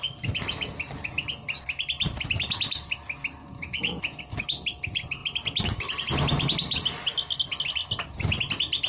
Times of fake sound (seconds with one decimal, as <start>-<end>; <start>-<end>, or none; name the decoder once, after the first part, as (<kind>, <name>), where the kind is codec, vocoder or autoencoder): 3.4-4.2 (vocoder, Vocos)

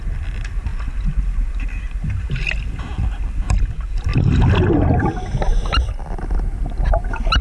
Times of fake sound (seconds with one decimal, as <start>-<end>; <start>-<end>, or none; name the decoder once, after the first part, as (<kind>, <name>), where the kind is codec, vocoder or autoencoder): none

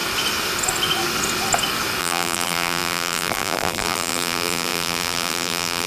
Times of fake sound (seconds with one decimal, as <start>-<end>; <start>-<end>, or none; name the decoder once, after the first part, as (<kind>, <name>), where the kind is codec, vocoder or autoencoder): 2.0-5.9 (vocoder, BigVGAN v2)

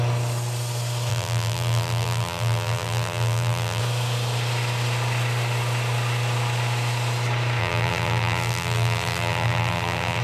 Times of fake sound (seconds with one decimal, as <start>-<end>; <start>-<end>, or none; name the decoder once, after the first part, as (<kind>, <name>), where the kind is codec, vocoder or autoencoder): 1.1-3.8 (vocoder, BigVGAN v2); 7.6-10.2

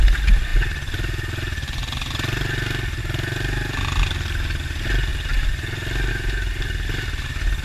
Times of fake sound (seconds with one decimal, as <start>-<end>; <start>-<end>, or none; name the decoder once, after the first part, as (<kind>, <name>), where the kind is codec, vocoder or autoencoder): none

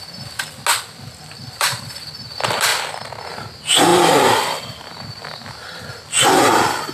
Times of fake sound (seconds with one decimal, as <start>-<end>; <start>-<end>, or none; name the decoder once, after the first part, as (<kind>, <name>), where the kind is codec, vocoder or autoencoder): 0.7-2.2 (vocoder, BigVGAN v2)

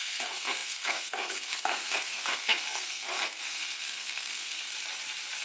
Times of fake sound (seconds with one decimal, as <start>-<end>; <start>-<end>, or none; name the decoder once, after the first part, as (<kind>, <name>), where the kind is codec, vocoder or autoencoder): 0.0-4.7 (codec, SNAC)

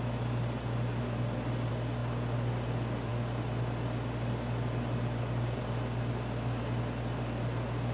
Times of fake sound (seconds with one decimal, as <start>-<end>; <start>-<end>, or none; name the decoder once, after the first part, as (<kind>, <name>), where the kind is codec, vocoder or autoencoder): none